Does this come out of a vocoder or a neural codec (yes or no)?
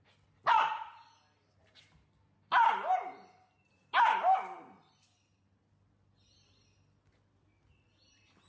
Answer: no